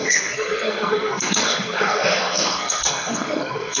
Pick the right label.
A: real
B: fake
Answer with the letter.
B